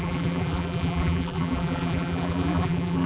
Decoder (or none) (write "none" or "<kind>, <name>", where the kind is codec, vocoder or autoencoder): vocoder, BigVGAN v2